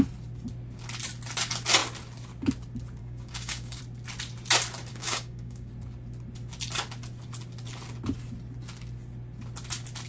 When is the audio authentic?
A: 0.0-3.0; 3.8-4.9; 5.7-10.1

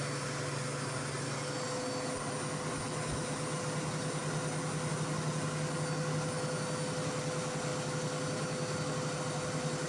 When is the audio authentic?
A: 0.0-9.9